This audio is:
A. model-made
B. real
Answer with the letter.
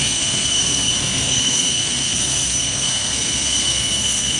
A